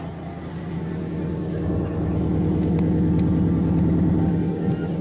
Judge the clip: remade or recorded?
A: recorded